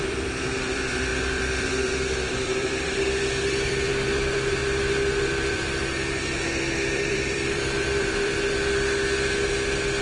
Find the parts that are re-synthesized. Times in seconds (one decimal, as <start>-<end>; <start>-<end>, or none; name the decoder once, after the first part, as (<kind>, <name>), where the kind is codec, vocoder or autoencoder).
0.0-4.6 (vocoder, BigVGAN v2); 5.5-8.3

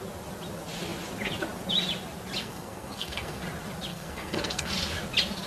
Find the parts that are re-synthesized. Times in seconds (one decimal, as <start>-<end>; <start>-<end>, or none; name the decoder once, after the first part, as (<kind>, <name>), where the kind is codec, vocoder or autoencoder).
2.4-3.4 (codec, SNAC); 3.9-4.7

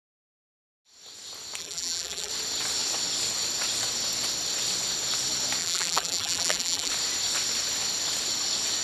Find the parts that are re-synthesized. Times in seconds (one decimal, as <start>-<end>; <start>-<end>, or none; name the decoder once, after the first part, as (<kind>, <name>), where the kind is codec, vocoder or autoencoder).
1.6-2.3 (vocoder, BigVGAN v2); 5.6-6.9

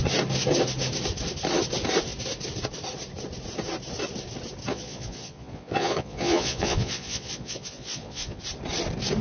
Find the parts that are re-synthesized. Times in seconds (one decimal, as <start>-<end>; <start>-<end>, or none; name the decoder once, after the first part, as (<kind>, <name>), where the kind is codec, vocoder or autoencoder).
4.7-8.4 (vocoder, Vocos)

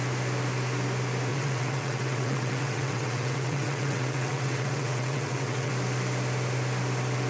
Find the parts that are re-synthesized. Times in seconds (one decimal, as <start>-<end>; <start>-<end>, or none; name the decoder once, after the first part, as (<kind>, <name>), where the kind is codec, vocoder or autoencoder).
1.3-5.7 (vocoder, WaveNeXt)